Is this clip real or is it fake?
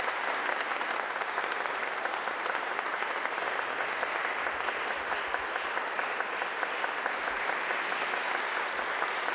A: real